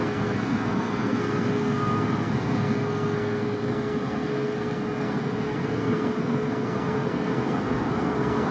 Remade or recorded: remade